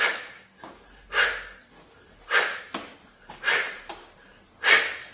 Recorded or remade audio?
recorded